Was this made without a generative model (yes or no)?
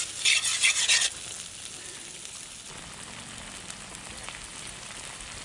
yes